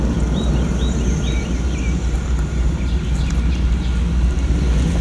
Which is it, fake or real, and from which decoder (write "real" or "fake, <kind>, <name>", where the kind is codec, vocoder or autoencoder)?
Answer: real